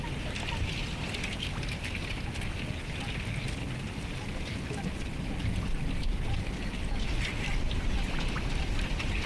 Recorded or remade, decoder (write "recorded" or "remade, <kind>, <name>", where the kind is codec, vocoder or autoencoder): recorded